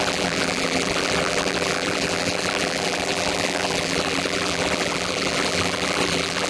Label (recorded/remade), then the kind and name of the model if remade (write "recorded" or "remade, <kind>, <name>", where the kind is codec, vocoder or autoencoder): remade, vocoder, BigVGAN v2